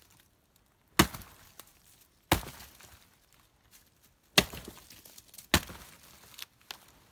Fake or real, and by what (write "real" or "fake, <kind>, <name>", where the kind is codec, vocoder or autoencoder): real